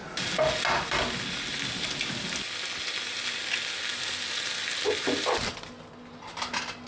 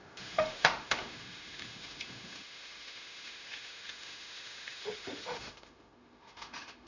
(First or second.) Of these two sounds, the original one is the first